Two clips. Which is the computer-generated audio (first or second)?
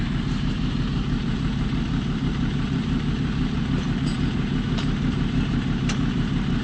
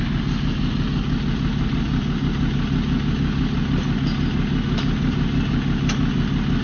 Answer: first